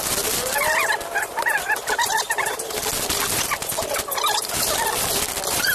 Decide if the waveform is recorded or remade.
recorded